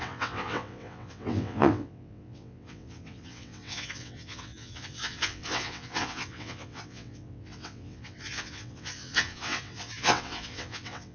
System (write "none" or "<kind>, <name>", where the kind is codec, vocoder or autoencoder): vocoder, WaveNeXt